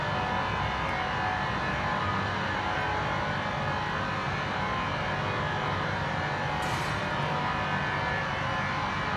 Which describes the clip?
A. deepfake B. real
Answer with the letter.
B